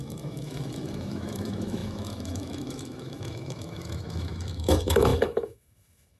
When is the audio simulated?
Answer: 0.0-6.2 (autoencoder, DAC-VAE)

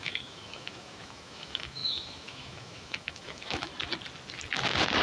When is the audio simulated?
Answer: 0.0-3.7 (autoencoder, DAC-VAE)

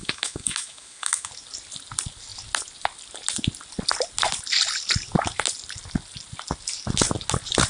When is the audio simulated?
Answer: 0.0-1.3 (autoencoder, DAC-VAE)

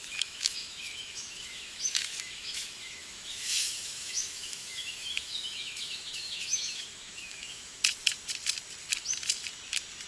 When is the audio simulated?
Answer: 0.0-7.8 (autoencoder, DAC-VAE)